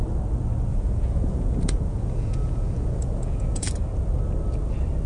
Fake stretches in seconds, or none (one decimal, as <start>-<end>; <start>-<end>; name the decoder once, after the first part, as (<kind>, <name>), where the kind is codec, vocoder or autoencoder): 0.7-3.7 (vocoder, Vocos)